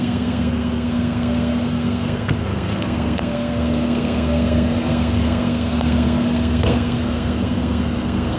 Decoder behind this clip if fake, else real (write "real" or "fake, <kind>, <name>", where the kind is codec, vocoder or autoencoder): fake, codec, SNAC